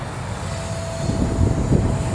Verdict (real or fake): real